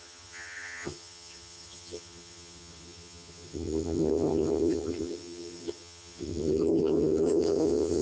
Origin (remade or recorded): remade